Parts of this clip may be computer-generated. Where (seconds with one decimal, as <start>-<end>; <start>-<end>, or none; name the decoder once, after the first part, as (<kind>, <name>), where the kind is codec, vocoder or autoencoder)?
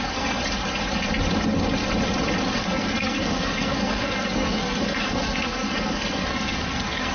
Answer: 0.0-0.4 (codec, SNAC); 2.5-7.1